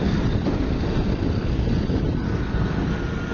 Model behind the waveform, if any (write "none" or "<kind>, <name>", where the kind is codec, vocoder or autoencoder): none